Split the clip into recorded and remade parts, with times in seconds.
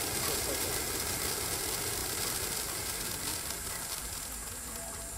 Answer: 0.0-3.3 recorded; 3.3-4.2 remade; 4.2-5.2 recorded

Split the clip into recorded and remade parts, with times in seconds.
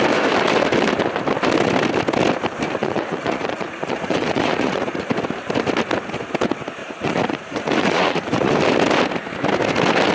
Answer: 0.0-2.8 recorded; 2.8-5.1 remade; 5.1-6.8 recorded; 6.8-8.6 remade; 8.6-10.1 recorded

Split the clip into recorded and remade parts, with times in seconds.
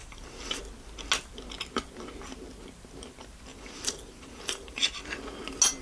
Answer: 0.0-0.6 remade; 0.6-3.5 recorded; 3.5-4.9 remade; 4.9-5.8 recorded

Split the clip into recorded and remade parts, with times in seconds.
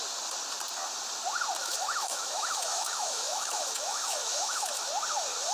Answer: 0.0-1.6 recorded; 1.6-4.9 remade; 4.9-5.5 recorded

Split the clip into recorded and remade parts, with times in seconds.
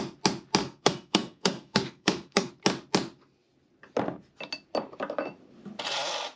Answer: 0.0-0.6 recorded; 0.6-2.5 remade; 2.5-6.4 recorded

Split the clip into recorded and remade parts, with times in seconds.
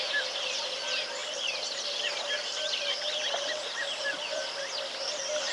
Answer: 0.0-1.2 recorded; 1.2-4.5 remade; 4.5-5.5 recorded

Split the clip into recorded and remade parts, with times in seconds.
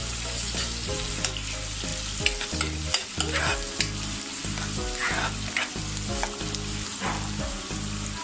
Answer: 0.0-1.1 remade; 1.1-8.2 recorded